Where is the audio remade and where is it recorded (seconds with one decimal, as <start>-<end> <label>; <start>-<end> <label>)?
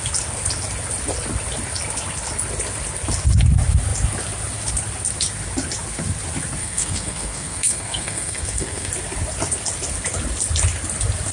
0.0-6.6 recorded; 6.6-8.9 remade; 8.9-11.3 recorded